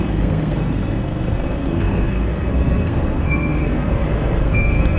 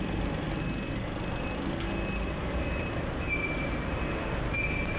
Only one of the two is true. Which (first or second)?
second